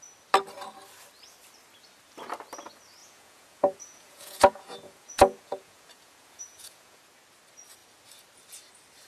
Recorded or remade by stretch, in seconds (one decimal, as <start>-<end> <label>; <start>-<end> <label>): 0.0-3.0 recorded; 3.0-7.0 remade; 7.0-9.1 recorded